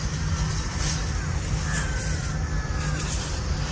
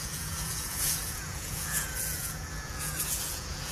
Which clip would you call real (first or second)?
first